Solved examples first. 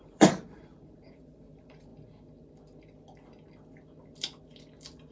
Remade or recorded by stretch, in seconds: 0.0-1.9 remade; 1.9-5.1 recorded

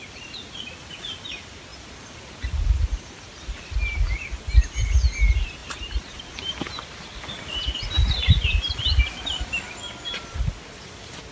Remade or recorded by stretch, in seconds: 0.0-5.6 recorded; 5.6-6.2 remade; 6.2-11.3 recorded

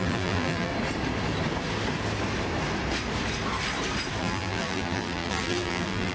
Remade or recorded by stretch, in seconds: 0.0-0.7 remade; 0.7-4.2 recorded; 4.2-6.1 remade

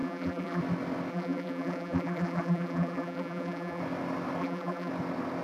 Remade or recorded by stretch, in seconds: 0.0-0.6 remade; 0.6-1.1 recorded; 1.1-3.8 remade; 3.8-4.4 recorded; 4.4-4.9 remade; 4.9-5.4 recorded

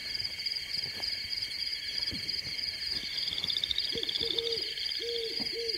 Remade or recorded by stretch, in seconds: 0.0-5.8 recorded

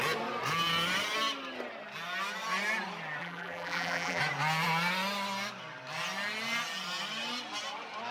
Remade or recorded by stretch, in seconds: 0.0-3.2 recorded; 3.2-4.2 remade; 4.2-8.1 recorded

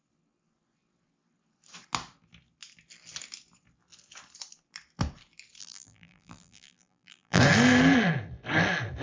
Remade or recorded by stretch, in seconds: 0.0-5.6 recorded; 5.6-7.4 remade; 7.4-9.0 recorded